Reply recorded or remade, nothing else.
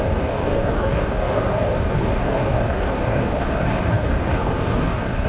remade